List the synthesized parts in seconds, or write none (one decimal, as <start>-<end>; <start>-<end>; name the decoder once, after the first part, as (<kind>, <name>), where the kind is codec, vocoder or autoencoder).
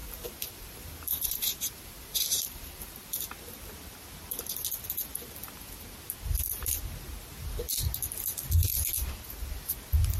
0.0-3.2 (vocoder, BigVGAN v2)